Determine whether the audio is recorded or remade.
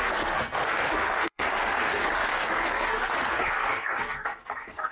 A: remade